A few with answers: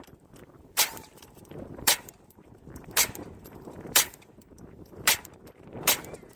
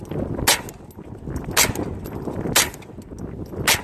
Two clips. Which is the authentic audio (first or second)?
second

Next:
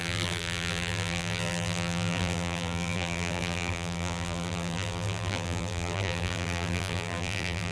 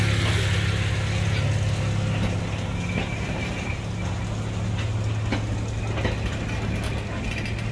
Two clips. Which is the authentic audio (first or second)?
second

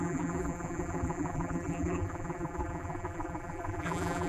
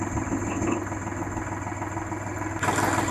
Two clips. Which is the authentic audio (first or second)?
second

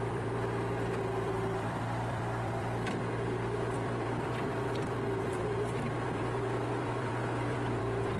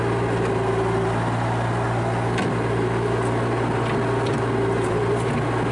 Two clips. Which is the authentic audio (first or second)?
second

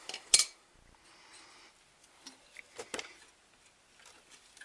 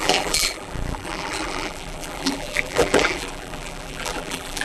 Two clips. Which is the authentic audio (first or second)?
first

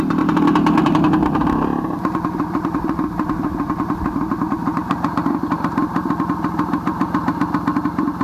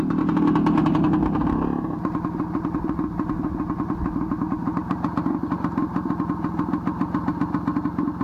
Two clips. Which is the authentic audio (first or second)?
second